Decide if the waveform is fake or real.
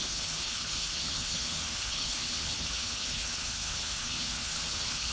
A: fake